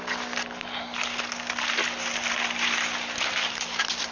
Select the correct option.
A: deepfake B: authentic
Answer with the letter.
B